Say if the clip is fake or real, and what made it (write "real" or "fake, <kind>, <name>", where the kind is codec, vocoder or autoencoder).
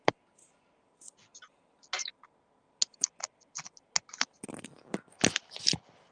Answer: real